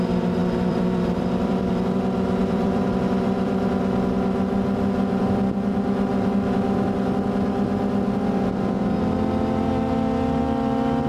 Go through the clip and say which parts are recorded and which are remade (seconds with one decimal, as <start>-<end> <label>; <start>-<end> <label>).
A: 0.0-0.4 recorded; 0.4-1.7 remade; 1.7-2.4 recorded; 2.4-3.7 remade; 3.7-11.1 recorded